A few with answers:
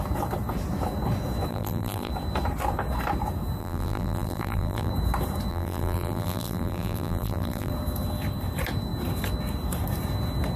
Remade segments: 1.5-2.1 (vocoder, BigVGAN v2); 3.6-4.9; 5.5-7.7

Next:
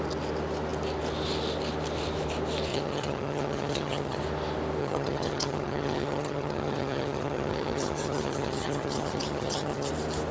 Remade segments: 2.7-4.2 (vocoder, HiFi-GAN); 4.8-9.9

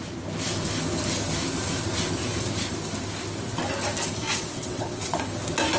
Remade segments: 4.2-5.2 (vocoder, WaveNeXt)

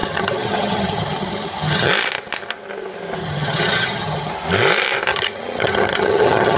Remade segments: 0.0-1.9 (vocoder, HiFi-GAN); 3.2-4.3; 5.1-6.6

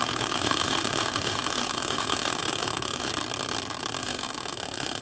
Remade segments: 0.0-3.1 (autoencoder, DAC-VAE); 4.0-5.0

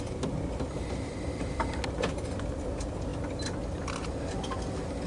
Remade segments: none